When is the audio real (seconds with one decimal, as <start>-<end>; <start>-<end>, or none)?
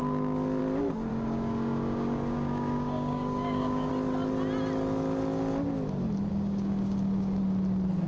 0.0-1.1; 3.9-6.3; 7.4-8.1